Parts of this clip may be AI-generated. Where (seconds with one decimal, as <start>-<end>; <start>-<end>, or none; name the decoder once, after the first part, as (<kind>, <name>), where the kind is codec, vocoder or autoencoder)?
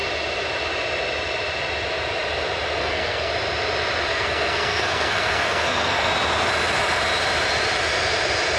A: 2.8-3.3 (codec, SNAC); 4.1-6.1